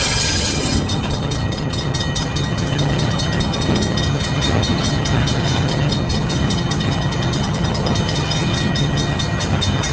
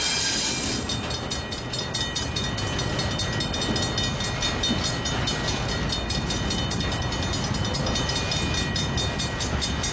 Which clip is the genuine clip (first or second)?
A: second